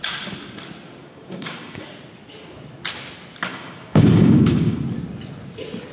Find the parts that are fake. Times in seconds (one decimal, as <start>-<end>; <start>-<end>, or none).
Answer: 1.0-1.9; 3.5-4.8